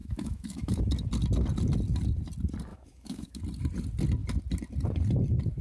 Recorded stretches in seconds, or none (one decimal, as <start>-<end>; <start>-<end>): 0.8-2.7; 3.4-5.6

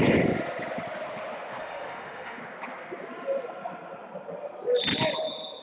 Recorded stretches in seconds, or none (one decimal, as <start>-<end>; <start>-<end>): 0.0-1.6; 2.4-5.6

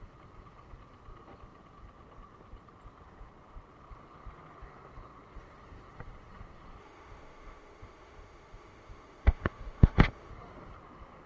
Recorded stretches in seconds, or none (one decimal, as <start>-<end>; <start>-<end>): 0.0-6.8; 10.3-11.3

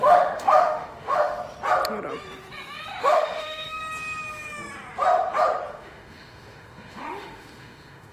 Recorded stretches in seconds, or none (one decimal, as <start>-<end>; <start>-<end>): 1.4-3.0; 3.8-5.7

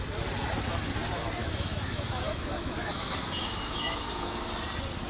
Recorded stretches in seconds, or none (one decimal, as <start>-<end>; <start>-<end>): 0.0-1.4; 4.5-5.1

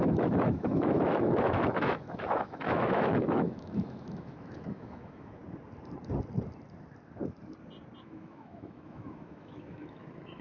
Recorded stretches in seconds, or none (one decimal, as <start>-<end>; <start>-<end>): 5.4-8.0

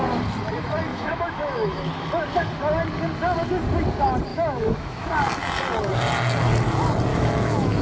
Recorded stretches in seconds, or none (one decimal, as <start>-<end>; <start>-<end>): 0.0-0.9; 2.1-4.3; 5.1-7.1